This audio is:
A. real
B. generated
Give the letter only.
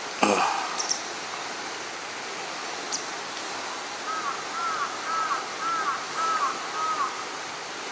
A